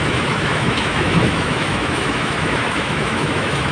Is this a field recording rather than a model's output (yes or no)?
no